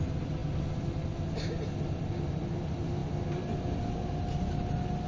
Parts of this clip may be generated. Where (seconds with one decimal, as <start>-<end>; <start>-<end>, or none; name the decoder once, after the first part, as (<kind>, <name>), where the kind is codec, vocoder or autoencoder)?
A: 0.0-0.4 (vocoder, BigVGAN v2); 2.1-3.0